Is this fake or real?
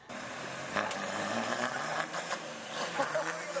real